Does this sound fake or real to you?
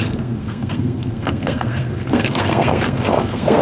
fake